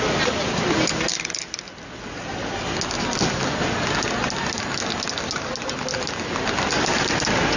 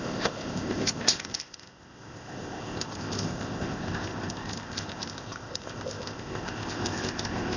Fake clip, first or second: second